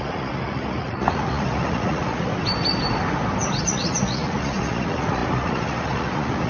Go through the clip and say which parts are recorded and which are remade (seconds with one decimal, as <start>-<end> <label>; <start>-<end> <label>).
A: 0.0-2.3 remade; 2.3-3.6 recorded; 3.6-6.5 remade